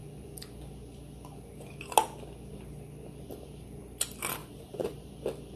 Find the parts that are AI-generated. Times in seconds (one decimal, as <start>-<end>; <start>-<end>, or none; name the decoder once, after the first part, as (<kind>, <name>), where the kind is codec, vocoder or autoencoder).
4.4-5.1 (vocoder, BigVGAN v2)